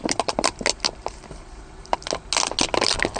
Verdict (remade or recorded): recorded